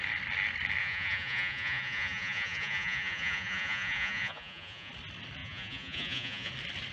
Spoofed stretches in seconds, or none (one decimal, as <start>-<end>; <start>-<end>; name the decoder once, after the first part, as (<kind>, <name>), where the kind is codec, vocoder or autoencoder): 0.8-4.9 (vocoder, Vocos); 5.4-6.5